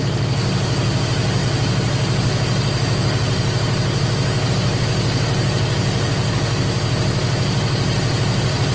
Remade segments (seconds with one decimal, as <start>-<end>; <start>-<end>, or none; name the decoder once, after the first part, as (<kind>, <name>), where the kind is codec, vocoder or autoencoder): none